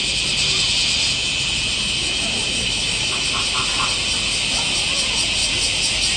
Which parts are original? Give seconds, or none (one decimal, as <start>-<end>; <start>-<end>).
0.0-2.0; 3.3-6.2

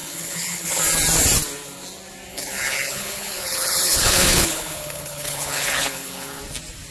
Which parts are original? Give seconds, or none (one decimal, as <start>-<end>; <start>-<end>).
0.8-2.3; 6.4-6.9